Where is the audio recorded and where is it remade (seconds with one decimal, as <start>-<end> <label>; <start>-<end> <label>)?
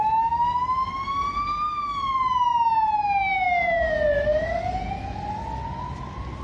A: 0.0-6.4 recorded